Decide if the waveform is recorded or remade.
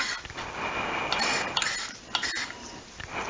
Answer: recorded